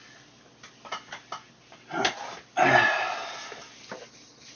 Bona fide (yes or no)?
yes